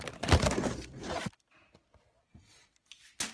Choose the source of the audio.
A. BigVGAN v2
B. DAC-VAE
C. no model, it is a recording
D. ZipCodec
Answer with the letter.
C